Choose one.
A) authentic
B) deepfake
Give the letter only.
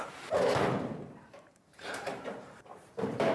B